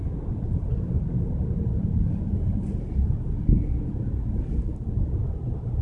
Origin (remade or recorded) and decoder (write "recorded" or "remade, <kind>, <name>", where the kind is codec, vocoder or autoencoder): recorded